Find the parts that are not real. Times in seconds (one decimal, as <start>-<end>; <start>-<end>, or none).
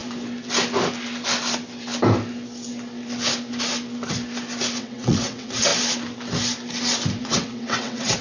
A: 4.8-5.7; 7.2-8.2